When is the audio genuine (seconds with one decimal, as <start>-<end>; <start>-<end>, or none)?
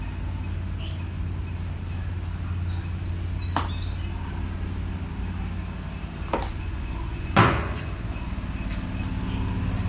0.0-6.5; 8.3-9.9